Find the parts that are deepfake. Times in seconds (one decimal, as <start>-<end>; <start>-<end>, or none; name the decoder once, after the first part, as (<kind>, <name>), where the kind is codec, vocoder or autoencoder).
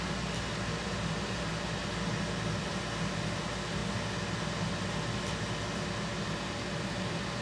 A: none